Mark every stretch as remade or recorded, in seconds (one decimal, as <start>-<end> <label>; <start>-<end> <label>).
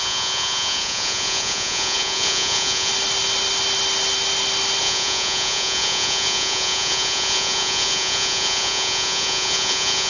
0.0-2.9 remade; 2.9-4.8 recorded; 4.8-10.1 remade